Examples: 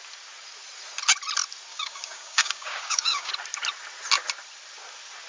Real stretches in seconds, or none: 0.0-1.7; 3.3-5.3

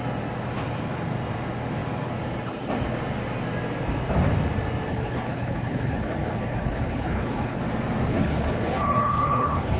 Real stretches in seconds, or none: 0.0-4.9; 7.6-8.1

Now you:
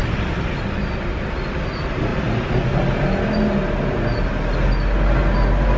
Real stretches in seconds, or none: 0.8-5.8